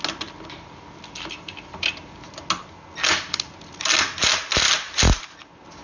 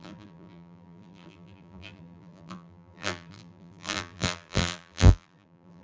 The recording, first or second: first